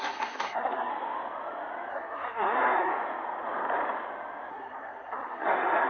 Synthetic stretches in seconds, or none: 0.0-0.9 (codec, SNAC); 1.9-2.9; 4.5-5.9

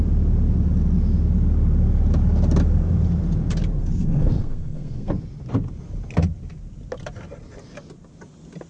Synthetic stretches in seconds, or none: 3.8-5.1 (codec, SNAC)